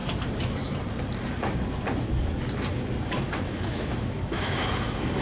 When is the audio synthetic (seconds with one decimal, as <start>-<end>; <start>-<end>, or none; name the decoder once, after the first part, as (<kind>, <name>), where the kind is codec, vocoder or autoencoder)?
3.1-5.2 (autoencoder, DAC-VAE)